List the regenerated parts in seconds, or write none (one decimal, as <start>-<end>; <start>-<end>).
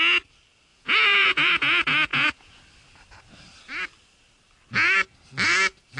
0.7-1.5; 2.1-2.6